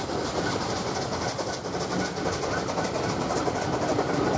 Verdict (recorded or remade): recorded